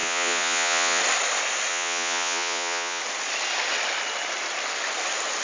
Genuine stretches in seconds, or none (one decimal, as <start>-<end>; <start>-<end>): 1.0-1.7; 3.0-5.4